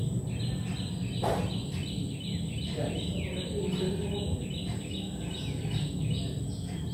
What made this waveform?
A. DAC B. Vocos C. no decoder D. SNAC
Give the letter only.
C